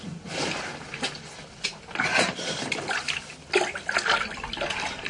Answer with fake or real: real